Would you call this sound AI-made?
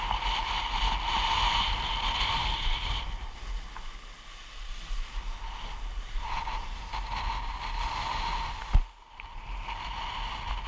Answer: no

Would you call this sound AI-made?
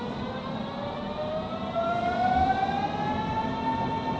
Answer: no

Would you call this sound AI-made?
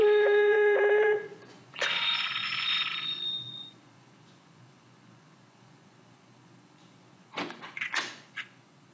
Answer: yes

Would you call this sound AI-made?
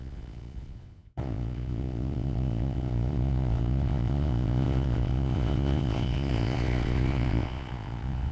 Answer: yes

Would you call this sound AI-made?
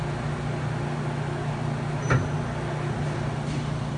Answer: no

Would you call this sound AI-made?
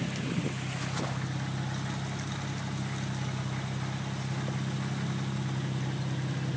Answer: no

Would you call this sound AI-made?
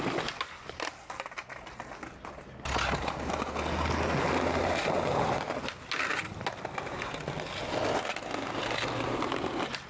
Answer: no